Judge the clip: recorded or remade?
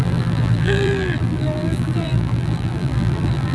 remade